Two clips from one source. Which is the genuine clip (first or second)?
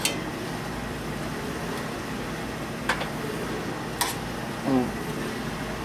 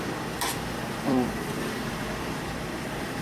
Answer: first